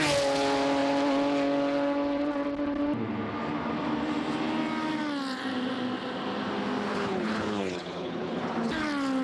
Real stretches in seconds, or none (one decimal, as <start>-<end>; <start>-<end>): 0.0-6.9; 8.4-9.2